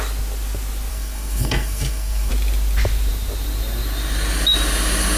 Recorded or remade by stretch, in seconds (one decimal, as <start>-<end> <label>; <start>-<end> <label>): 0.0-0.9 recorded; 0.9-2.3 remade; 2.3-5.2 recorded